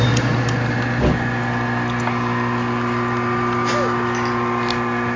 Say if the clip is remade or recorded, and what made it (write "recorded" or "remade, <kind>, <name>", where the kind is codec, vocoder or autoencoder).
recorded